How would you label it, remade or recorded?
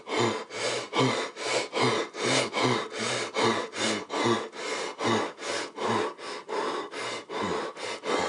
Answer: recorded